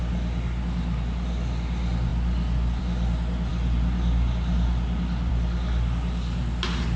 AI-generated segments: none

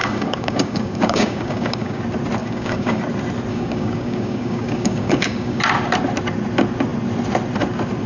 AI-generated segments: 0.0-2.0 (codec, DAC); 2.4-3.0; 3.5-5.6

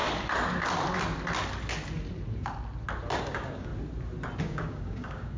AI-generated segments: 3.2-3.7 (codec, DAC); 4.4-5.4

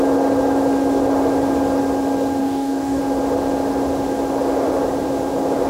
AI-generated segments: 2.4-3.0 (codec, DAC)

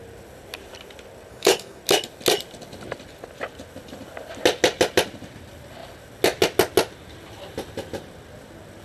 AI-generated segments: 1.3-1.8 (codec, DAC)

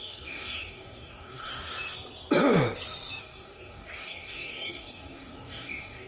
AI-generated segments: 0.0-1.5 (codec, DAC); 3.2-6.1

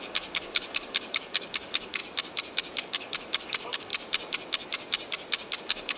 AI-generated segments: 0.0-2.0 (codec, DAC); 2.8-3.9; 5.6-6.0